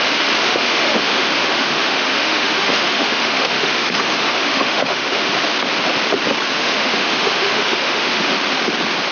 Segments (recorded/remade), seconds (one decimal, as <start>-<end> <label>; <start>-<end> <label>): 0.0-0.4 recorded; 0.4-5.3 remade; 5.3-6.5 recorded; 6.5-8.3 remade; 8.3-9.1 recorded

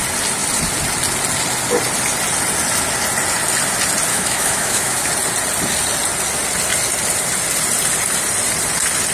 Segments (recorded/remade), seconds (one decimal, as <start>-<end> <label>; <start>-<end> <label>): 0.0-4.1 recorded; 4.1-5.1 remade; 5.1-9.1 recorded

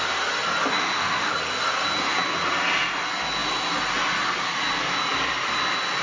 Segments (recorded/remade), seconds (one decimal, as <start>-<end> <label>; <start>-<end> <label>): 0.0-0.8 recorded; 0.8-1.3 remade; 1.3-6.0 recorded

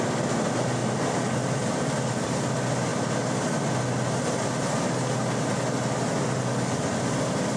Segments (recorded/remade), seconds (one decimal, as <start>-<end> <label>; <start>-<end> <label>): 0.0-7.6 recorded

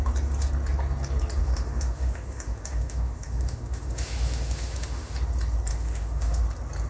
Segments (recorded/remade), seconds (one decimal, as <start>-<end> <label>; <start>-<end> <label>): 0.0-1.4 recorded; 1.4-5.1 remade; 5.1-5.7 recorded; 5.7-6.4 remade; 6.4-6.9 recorded